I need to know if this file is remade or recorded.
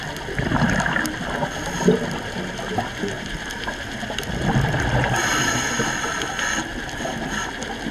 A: recorded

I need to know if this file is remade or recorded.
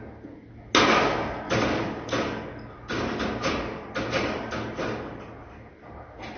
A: recorded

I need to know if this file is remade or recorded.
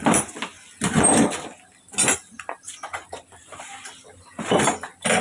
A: recorded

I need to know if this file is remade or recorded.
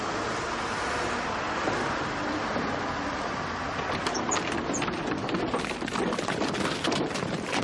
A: recorded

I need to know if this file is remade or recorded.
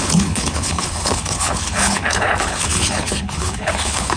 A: remade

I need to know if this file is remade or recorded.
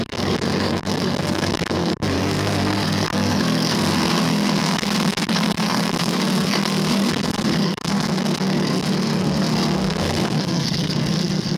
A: remade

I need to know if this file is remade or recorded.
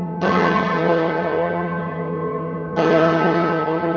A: remade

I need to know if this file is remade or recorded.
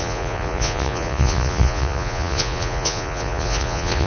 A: remade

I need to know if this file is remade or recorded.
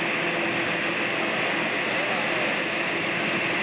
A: recorded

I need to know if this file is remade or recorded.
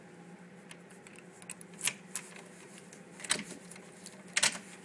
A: recorded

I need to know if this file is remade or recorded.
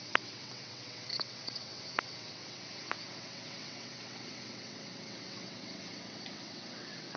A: remade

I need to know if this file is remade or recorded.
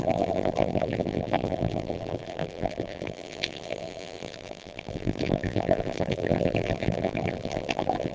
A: remade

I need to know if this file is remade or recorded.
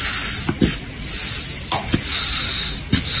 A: recorded